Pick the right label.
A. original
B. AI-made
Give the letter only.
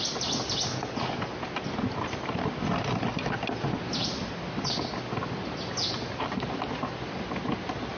A